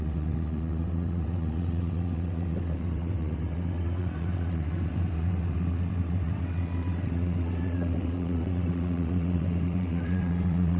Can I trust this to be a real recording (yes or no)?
no